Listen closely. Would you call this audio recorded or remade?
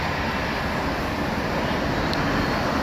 recorded